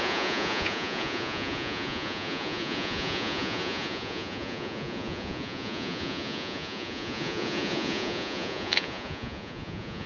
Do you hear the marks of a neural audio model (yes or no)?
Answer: yes